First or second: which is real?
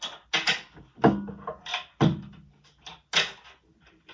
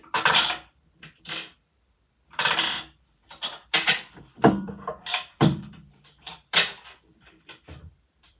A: first